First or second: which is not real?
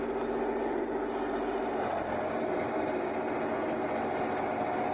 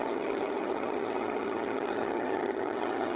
second